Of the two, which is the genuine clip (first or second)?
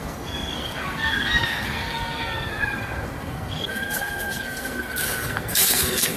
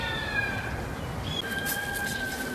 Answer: second